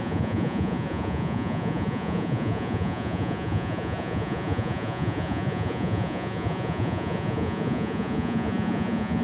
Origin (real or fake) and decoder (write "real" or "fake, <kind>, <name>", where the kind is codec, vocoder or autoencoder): fake, vocoder, Vocos